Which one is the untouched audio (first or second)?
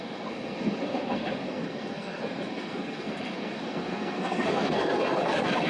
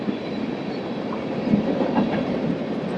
second